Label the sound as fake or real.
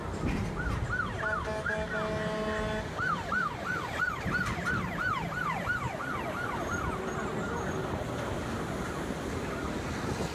real